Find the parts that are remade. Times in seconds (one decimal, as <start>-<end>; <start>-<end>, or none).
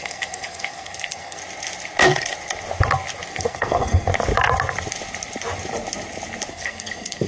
0.0-1.4; 3.3-4.1; 6.5-7.3